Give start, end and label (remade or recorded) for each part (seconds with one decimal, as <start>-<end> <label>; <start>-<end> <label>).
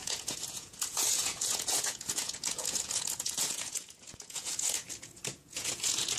0.0-6.2 remade